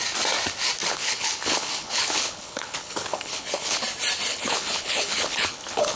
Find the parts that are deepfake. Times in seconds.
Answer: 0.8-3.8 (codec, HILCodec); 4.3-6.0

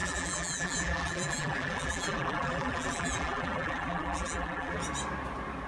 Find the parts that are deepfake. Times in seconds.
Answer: 0.0-4.8 (vocoder, BigVGAN v2)

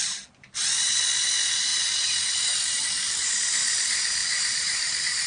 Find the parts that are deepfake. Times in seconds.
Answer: 1.7-3.3 (vocoder, BigVGAN v2); 4.2-5.3

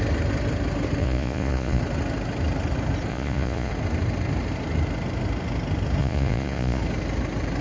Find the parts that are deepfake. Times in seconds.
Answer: 1.0-1.8 (vocoder, Vocos); 3.1-3.7; 6.0-6.8

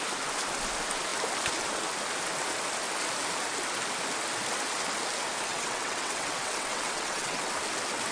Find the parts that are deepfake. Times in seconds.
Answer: 5.5-7.5 (vocoder, WaveNeXt)

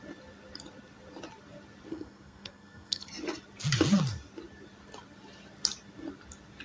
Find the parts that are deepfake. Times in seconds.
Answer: 1.9-3.1 (codec, SNAC)